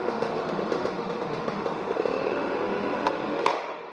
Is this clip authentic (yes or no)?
no